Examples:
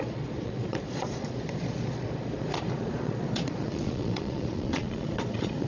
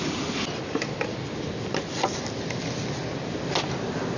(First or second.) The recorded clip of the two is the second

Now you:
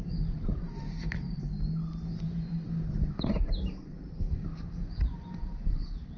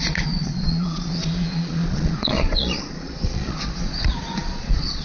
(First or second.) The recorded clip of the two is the first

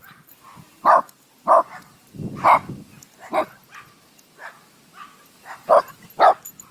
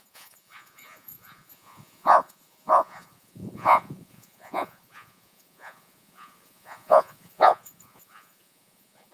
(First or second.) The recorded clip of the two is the first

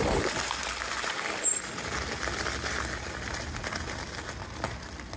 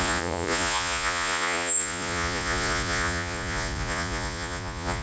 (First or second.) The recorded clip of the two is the first